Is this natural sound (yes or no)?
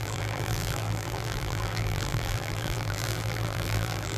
no